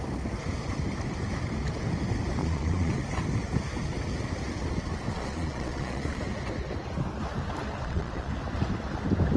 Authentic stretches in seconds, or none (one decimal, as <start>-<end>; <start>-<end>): 0.0-2.4; 2.9-5.1; 6.2-7.8; 8.3-9.4